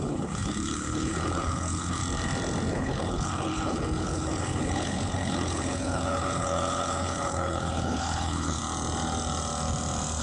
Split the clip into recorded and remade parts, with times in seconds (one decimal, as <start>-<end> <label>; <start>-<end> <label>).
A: 0.0-2.0 remade; 2.0-2.7 recorded; 2.7-8.6 remade; 8.6-10.2 recorded